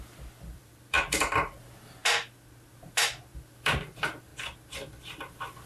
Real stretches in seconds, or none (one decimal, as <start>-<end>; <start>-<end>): 2.0-3.3; 4.3-5.0